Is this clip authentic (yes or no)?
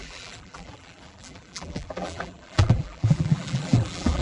no